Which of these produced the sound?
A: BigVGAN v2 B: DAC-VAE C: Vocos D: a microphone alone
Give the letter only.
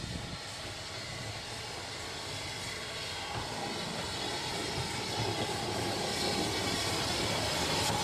D